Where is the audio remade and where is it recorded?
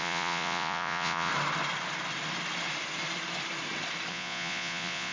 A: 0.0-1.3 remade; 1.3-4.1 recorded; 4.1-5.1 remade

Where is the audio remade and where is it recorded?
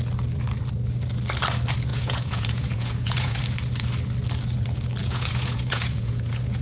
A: 0.0-1.9 recorded; 1.9-3.4 remade; 3.4-5.0 recorded; 5.0-6.6 remade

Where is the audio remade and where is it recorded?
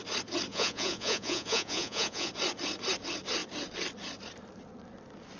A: 0.0-0.5 recorded; 0.5-2.3 remade; 2.3-5.4 recorded